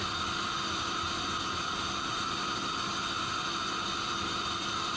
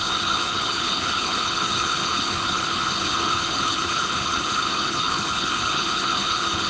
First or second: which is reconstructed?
second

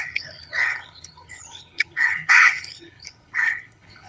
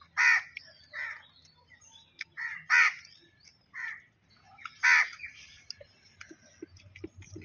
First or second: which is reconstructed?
first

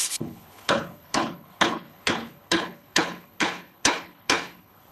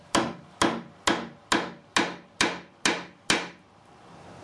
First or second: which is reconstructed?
first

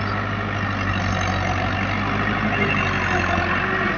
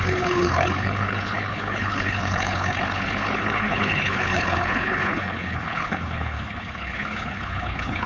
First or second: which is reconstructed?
second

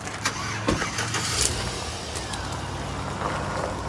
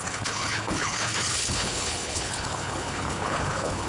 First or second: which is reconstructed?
second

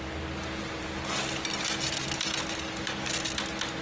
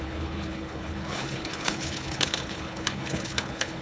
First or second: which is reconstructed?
second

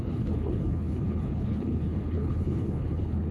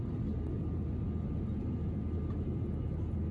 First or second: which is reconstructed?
first